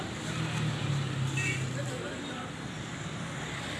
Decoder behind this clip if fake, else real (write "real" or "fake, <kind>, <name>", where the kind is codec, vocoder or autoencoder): real